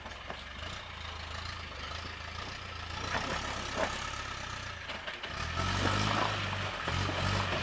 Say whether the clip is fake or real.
real